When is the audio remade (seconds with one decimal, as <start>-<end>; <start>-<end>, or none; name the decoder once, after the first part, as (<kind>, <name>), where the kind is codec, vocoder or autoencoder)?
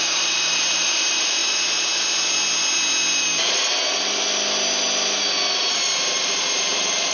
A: 0.0-1.4 (vocoder, BigVGAN v2); 5.7-7.1